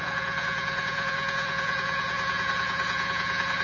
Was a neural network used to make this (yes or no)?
yes